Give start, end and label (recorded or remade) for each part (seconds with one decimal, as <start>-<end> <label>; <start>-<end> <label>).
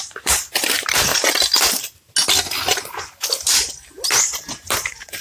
0.0-1.1 remade; 1.1-4.2 recorded; 4.2-5.2 remade